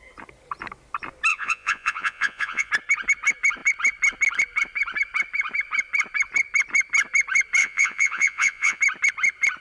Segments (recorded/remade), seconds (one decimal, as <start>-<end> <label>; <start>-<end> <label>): 0.0-1.3 recorded; 1.3-2.7 remade; 2.7-7.6 recorded; 7.6-8.8 remade; 8.8-9.6 recorded